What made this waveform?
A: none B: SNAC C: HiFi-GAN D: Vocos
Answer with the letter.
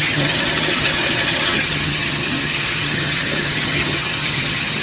C